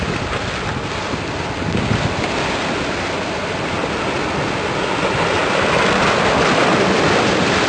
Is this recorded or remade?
recorded